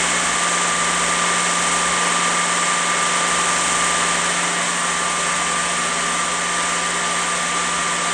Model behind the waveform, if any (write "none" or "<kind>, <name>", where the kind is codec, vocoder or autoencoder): none